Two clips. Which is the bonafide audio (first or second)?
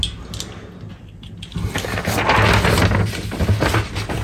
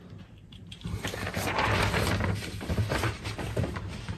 first